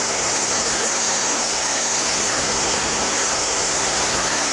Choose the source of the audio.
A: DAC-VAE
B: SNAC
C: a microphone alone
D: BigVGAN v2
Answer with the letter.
B